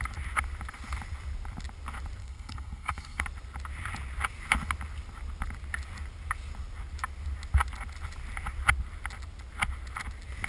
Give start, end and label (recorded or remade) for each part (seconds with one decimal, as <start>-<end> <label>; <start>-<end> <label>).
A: 0.0-2.2 recorded; 2.2-3.2 remade; 3.2-10.5 recorded